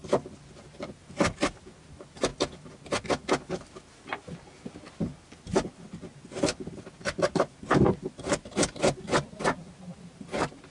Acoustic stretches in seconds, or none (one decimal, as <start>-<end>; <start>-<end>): 1.6-5.5; 9.0-10.7